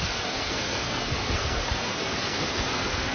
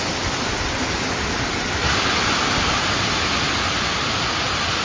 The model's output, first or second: first